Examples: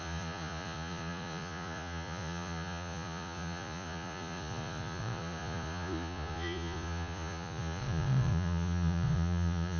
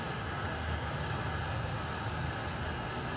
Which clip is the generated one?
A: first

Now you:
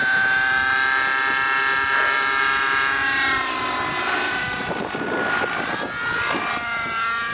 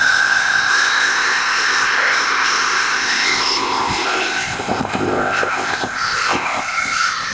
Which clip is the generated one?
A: second